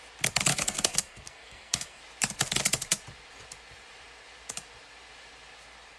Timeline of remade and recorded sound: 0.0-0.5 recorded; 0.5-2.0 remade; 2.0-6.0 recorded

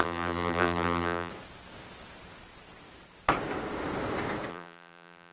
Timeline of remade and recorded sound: 0.0-1.3 remade; 1.3-4.5 recorded; 4.5-5.3 remade

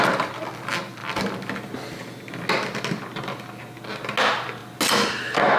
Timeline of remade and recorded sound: 0.0-5.6 recorded

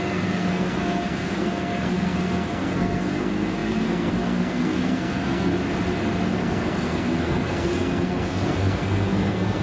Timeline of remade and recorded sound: 0.0-5.5 remade; 5.5-6.3 recorded; 6.3-9.6 remade